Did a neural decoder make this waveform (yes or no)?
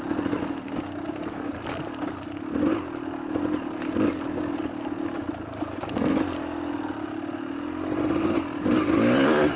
no